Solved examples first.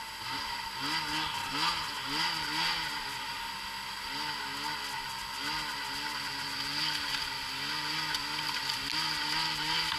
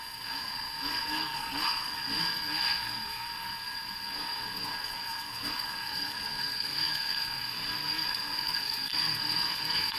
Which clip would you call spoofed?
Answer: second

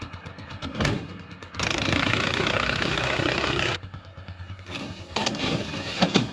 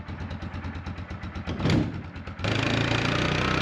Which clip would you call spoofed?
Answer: first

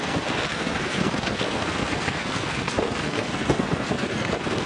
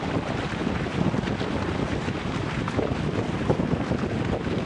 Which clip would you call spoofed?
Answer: first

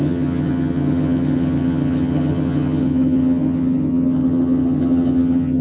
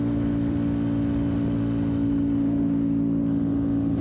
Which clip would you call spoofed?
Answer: first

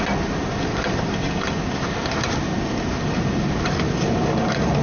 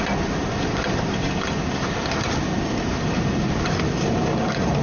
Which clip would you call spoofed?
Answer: second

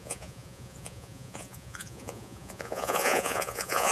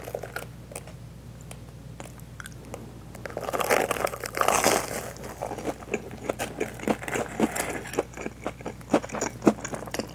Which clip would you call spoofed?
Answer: first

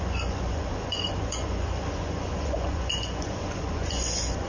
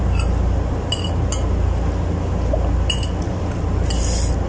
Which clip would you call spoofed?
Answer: first